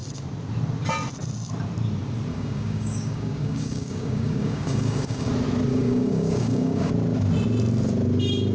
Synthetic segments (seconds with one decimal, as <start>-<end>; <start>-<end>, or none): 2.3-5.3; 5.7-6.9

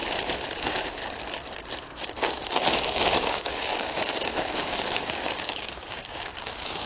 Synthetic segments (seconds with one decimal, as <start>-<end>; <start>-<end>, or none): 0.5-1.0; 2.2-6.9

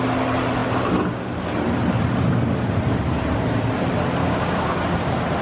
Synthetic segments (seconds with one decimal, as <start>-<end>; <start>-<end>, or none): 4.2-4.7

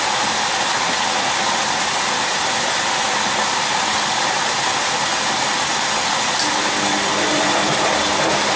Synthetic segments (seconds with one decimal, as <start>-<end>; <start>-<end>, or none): none